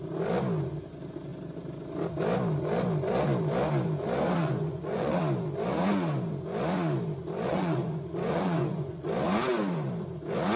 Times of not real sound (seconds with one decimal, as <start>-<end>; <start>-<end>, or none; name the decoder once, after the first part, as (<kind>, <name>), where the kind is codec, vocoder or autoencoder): 4.4-5.2 (vocoder, Vocos); 7.5-9.1